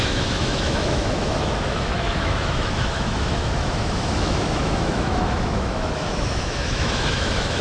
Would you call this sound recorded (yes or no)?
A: no